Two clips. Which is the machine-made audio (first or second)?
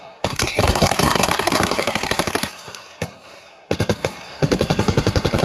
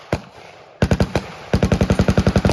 first